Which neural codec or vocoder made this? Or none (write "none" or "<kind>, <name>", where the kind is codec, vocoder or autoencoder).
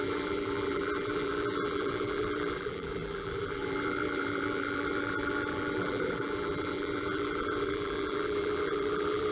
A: vocoder, BigVGAN v2